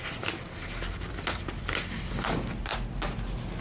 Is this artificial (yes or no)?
no